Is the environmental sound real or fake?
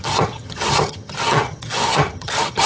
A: fake